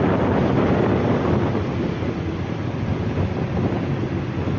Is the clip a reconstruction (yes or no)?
no